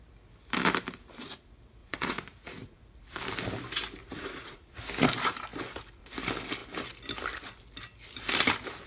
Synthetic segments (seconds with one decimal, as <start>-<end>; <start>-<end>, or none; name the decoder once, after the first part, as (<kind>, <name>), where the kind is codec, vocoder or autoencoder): 1.8-2.8 (vocoder, Vocos); 4.0-4.6